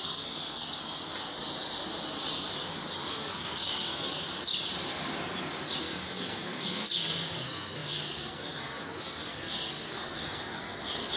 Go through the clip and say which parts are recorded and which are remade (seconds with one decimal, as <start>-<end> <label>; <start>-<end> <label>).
0.0-1.0 remade; 1.0-3.1 recorded; 3.1-4.2 remade; 4.2-5.8 recorded; 5.8-11.2 remade

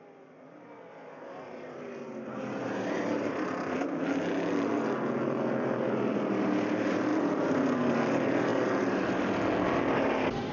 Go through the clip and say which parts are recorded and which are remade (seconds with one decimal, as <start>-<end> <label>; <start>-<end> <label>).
0.0-10.5 recorded

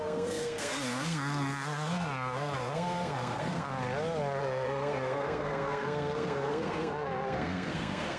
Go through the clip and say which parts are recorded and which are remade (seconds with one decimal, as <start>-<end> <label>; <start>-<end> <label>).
0.0-3.7 remade; 3.7-4.4 recorded; 4.4-8.2 remade

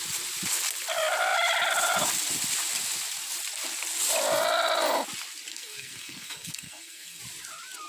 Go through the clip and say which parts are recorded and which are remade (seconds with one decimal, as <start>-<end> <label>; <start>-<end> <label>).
0.0-5.5 recorded; 5.5-7.2 remade; 7.2-7.9 recorded

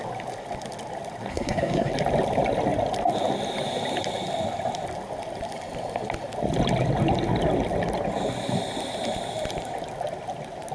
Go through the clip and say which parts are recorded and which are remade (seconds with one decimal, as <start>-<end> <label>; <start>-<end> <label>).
0.0-1.3 recorded; 1.3-1.9 remade; 1.9-10.7 recorded

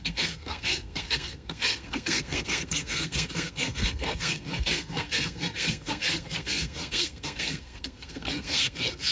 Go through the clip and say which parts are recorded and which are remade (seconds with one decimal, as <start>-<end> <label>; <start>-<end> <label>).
0.0-9.1 remade

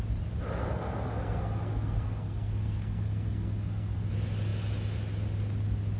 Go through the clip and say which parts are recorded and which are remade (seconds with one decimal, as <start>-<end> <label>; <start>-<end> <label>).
0.0-0.6 recorded; 0.6-4.1 remade; 4.1-6.0 recorded

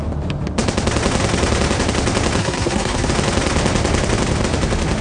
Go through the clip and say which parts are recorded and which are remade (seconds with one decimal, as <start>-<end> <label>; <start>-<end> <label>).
0.0-2.4 recorded; 2.4-3.1 remade; 3.1-5.0 recorded